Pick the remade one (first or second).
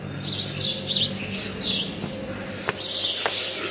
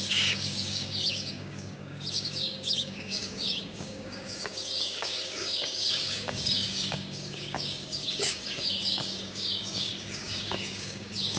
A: second